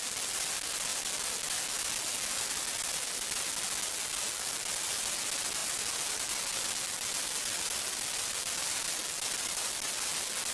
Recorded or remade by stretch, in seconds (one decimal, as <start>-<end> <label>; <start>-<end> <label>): 0.0-10.5 recorded